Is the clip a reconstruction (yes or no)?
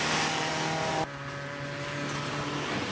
no